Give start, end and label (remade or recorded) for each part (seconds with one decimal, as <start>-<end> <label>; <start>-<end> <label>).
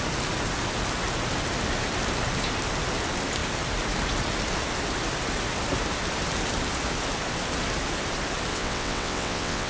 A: 0.0-8.5 recorded; 8.5-9.7 remade